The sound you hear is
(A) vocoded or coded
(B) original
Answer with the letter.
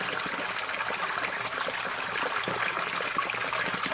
B